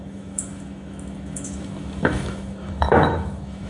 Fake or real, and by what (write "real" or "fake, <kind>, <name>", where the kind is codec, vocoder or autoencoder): fake, autoencoder, DAC-VAE